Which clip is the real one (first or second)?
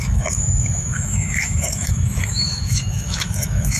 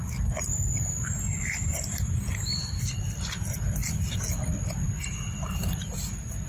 second